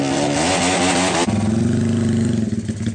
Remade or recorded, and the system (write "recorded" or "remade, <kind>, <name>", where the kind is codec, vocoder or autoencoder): recorded